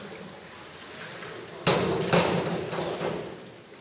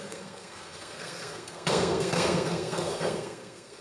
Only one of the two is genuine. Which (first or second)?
first